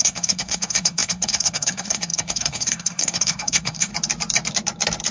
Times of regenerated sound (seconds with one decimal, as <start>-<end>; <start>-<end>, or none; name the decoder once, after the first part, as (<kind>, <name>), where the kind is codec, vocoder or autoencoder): 0.0-3.9 (codec, SNAC)